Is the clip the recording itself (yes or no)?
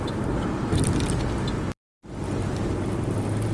yes